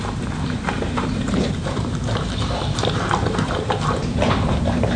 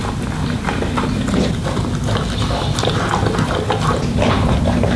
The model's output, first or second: first